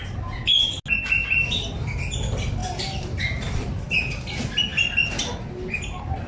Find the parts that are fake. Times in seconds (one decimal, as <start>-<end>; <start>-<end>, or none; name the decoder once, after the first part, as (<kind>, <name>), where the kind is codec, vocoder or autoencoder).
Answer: none